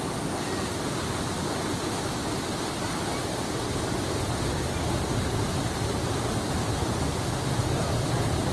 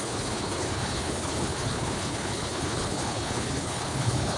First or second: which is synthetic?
second